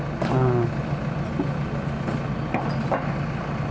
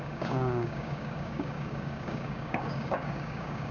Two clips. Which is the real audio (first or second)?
first